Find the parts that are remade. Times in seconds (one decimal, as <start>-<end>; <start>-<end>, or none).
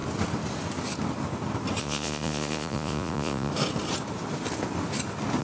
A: 1.8-3.5